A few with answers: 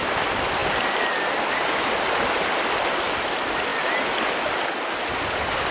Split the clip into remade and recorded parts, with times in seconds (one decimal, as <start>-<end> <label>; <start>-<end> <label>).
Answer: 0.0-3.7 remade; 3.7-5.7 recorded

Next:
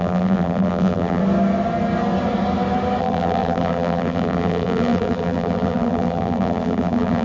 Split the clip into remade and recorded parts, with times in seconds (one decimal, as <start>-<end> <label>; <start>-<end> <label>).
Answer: 0.0-1.2 remade; 1.2-3.0 recorded; 3.0-7.2 remade

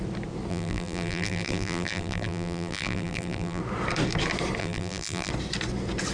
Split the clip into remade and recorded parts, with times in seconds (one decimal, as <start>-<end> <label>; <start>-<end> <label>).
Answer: 0.0-0.5 recorded; 0.5-3.6 remade; 3.6-4.6 recorded; 4.6-5.3 remade; 5.3-6.1 recorded

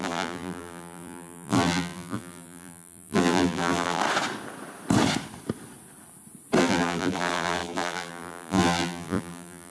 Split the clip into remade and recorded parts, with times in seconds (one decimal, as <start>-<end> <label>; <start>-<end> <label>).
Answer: 0.0-4.0 remade; 4.0-6.6 recorded; 6.6-9.7 remade